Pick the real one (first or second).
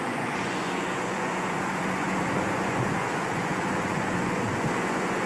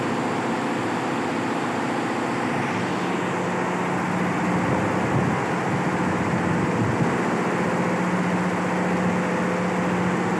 second